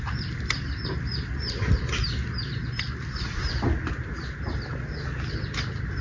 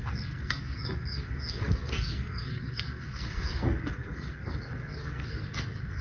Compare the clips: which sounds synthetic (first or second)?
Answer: second